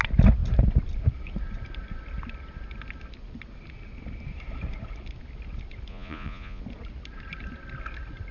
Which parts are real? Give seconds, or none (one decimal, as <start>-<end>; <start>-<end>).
0.0-5.9; 6.6-8.3